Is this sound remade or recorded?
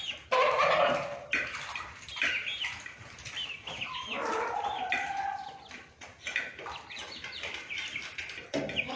recorded